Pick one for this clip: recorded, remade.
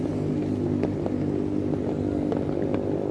recorded